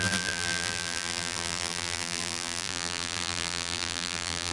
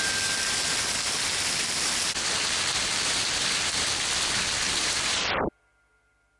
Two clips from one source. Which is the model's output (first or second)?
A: first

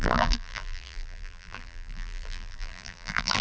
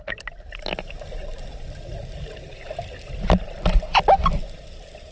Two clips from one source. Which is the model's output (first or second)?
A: first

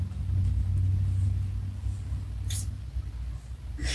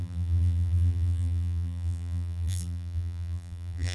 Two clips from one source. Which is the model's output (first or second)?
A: second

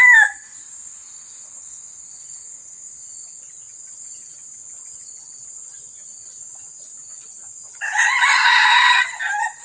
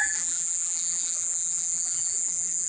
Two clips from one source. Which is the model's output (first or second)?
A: second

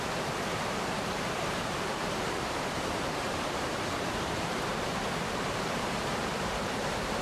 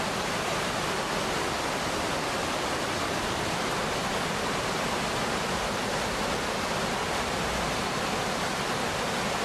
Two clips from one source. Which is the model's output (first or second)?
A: first